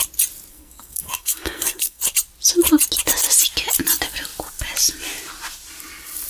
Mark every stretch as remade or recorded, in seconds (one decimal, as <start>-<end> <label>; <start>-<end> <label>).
0.0-0.5 recorded; 0.5-2.0 remade; 2.0-6.3 recorded